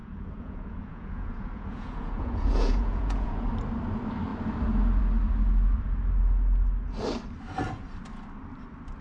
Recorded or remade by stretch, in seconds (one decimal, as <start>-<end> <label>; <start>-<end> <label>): 0.0-3.5 remade; 3.5-9.0 recorded